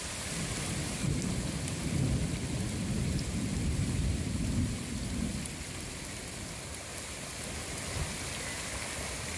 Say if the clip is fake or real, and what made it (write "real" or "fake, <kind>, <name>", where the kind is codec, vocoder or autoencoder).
real